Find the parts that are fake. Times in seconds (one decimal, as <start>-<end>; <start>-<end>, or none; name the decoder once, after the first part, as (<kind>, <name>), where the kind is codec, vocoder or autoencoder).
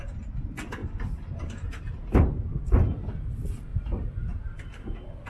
0.8-2.3 (vocoder, BigVGAN v2); 3.7-4.4